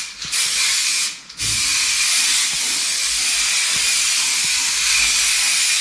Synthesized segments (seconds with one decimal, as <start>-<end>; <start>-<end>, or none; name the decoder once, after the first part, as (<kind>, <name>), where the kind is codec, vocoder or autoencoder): 0.9-1.4 (vocoder, Vocos)